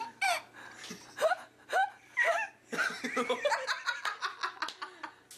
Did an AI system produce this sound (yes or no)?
no